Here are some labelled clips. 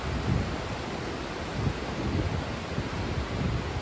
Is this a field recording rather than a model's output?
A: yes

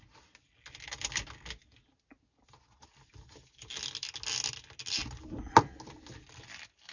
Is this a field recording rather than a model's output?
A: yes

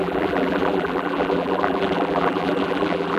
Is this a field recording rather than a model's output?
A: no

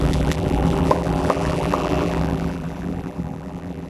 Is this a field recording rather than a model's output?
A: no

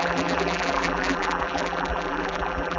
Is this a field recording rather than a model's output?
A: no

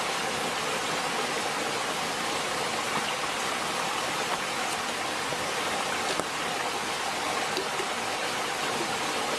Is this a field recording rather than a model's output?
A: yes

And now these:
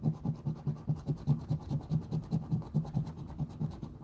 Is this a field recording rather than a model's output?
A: yes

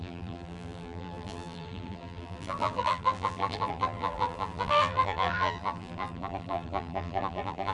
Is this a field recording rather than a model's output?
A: no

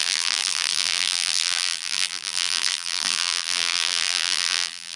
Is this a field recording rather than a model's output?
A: no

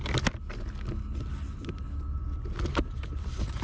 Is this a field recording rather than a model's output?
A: yes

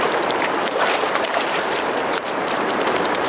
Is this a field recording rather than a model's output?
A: no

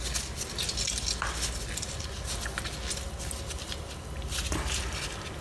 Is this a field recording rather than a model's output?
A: yes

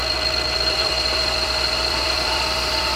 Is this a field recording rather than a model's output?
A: no